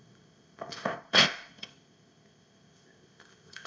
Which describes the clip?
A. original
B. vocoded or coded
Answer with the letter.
B